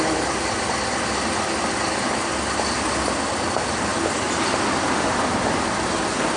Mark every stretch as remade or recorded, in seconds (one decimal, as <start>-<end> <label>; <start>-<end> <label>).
0.0-3.9 remade; 3.9-4.6 recorded; 4.6-6.4 remade